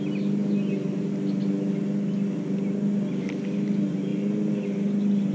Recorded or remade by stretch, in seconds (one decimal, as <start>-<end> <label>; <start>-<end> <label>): 0.0-5.3 recorded